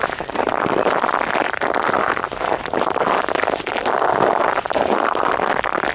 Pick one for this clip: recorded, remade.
recorded